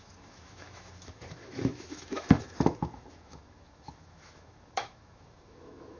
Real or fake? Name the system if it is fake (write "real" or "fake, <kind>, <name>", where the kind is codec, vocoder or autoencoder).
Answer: fake, autoencoder, DAC-VAE